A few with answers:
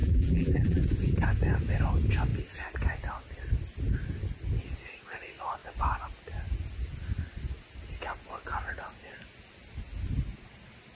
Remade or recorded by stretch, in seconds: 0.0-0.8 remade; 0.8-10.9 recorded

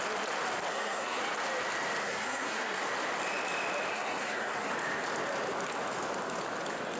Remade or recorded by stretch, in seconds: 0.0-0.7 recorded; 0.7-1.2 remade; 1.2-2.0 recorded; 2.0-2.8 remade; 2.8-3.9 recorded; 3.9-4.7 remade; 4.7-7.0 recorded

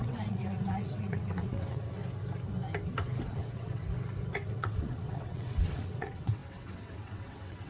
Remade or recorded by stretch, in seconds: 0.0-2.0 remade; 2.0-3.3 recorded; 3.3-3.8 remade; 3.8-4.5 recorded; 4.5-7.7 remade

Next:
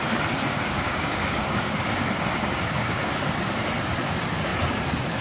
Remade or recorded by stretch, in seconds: 0.0-0.5 recorded; 0.5-3.1 remade; 3.1-5.2 recorded